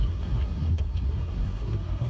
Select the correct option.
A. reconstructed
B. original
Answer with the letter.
A